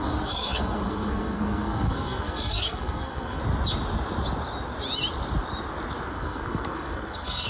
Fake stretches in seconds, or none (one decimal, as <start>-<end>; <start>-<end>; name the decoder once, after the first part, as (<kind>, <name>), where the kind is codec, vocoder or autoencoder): 0.0-3.4 (codec, SNAC); 6.1-7.5